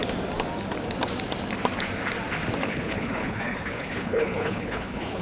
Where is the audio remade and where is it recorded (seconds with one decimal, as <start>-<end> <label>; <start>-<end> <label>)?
0.0-2.7 recorded; 2.7-5.2 remade